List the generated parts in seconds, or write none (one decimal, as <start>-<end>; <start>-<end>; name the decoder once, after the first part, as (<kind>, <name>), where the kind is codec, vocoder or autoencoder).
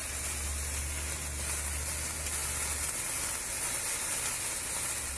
none